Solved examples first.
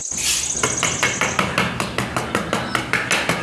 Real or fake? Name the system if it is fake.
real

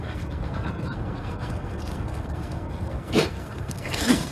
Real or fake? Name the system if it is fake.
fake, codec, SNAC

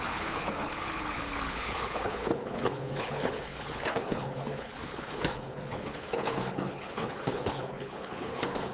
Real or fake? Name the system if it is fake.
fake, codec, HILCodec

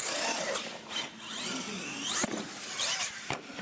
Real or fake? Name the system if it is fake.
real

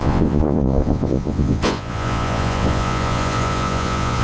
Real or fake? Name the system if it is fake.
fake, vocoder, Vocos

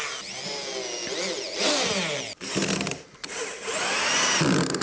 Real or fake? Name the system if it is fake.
real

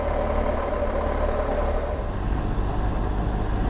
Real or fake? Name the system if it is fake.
real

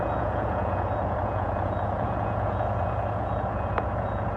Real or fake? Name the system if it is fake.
fake, vocoder, Vocos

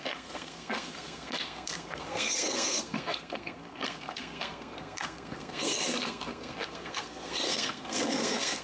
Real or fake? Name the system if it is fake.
fake, codec, SNAC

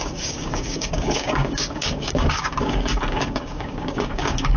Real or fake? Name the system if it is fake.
fake, codec, DAC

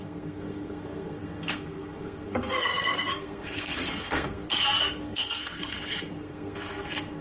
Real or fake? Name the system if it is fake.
fake, codec, SNAC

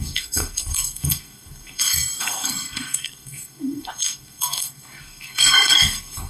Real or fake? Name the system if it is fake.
fake, codec, SNAC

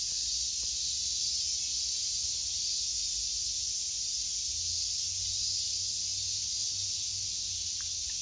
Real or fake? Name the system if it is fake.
real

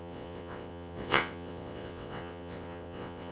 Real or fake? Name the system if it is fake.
fake, vocoder, WaveNeXt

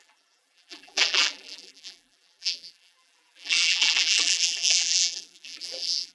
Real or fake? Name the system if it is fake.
fake, vocoder, BigVGAN v2